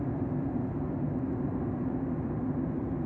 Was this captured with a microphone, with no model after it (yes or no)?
yes